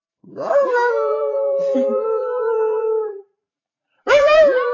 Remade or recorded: remade